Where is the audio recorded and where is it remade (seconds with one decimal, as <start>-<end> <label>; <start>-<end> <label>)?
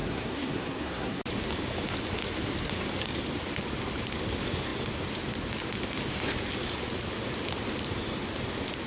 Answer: 0.0-1.2 remade; 1.2-8.9 recorded